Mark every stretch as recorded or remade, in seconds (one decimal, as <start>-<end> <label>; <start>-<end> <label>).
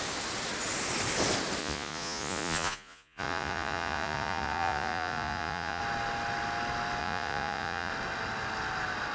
0.0-1.6 recorded; 1.6-5.8 remade; 5.8-7.0 recorded; 7.0-7.9 remade; 7.9-9.1 recorded